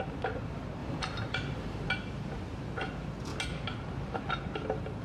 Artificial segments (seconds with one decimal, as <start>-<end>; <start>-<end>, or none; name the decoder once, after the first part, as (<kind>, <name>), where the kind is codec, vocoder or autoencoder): 0.8-1.9 (vocoder, BigVGAN v2)